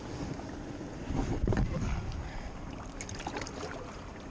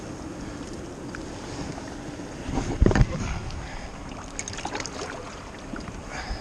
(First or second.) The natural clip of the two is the second